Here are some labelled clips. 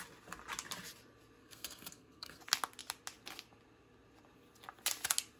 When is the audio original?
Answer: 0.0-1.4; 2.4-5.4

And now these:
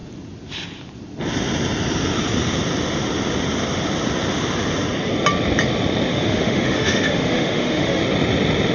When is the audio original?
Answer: 0.0-6.1; 8.0-8.7

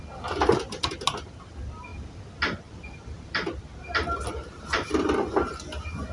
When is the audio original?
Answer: 0.0-6.1

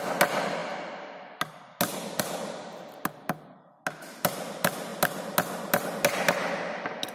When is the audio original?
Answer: 0.0-7.1

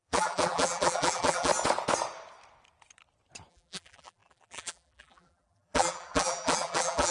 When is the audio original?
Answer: 1.5-3.5

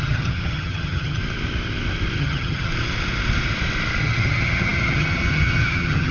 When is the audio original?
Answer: 1.2-2.2; 2.7-4.0